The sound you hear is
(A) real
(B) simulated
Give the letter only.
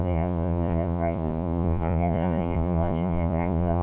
B